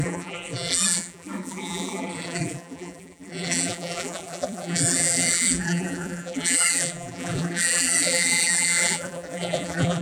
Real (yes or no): no